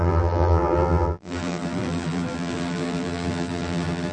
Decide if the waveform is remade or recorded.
remade